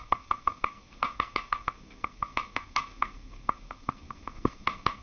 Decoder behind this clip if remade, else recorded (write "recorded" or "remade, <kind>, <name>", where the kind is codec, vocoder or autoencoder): remade, codec, SNAC